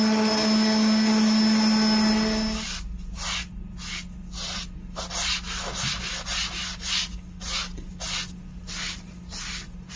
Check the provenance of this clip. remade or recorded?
recorded